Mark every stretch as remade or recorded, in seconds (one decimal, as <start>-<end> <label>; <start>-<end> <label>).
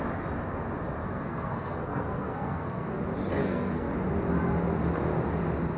0.0-1.0 recorded; 1.0-3.0 remade; 3.0-3.4 recorded; 3.4-3.9 remade; 3.9-5.8 recorded